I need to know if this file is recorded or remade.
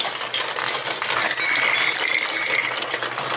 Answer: recorded